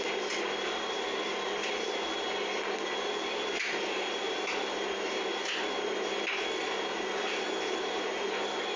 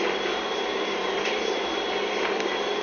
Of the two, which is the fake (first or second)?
second